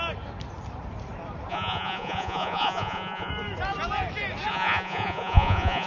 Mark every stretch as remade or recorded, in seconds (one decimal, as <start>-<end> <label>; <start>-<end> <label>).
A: 0.0-1.5 recorded; 1.5-3.3 remade; 3.3-4.5 recorded; 4.5-5.9 remade